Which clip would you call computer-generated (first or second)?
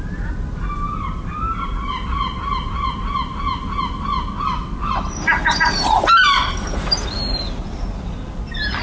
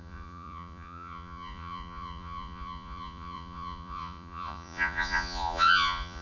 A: second